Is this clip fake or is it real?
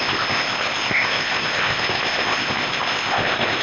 fake